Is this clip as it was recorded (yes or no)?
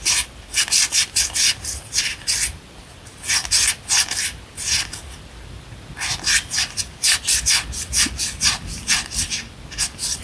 yes